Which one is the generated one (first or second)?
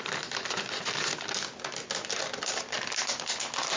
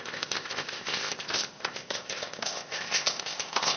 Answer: second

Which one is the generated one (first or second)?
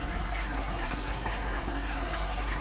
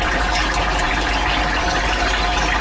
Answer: first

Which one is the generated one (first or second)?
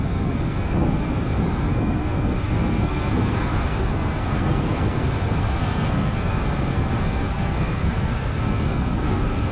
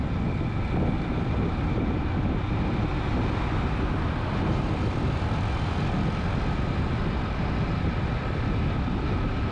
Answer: first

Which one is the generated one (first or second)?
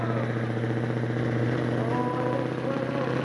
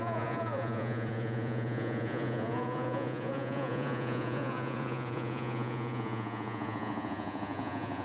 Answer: second